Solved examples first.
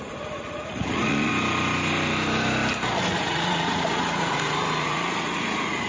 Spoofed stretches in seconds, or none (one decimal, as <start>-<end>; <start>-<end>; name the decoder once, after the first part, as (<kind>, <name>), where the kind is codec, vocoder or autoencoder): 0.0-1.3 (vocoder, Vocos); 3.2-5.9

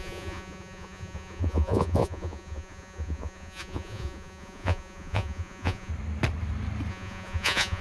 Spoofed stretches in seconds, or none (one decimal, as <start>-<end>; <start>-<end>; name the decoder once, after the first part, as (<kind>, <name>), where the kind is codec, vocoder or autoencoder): 0.0-5.9 (vocoder, Vocos); 6.9-7.8

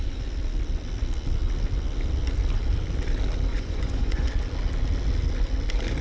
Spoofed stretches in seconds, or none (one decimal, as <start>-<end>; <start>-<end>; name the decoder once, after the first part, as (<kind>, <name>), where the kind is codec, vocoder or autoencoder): 3.5-4.3 (vocoder, Vocos)

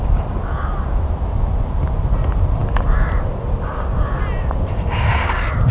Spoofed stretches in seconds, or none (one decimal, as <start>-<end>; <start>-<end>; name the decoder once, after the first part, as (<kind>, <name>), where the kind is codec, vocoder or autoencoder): none

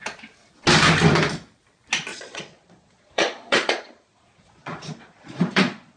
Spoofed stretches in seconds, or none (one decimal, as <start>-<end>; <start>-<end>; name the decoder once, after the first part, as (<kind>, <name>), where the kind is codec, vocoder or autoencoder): 2.1-6.0 (vocoder, Vocos)

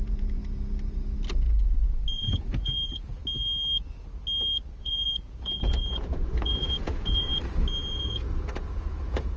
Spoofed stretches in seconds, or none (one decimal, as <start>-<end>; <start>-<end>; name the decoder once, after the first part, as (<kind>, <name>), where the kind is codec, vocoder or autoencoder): 0.0-0.4 (vocoder, Vocos); 2.1-3.2; 4.8-7.3; 7.9-9.4

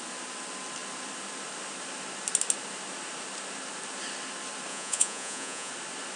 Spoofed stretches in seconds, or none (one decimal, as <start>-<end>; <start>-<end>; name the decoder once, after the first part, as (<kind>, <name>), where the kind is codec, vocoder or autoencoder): 4.7-5.7 (vocoder, Vocos)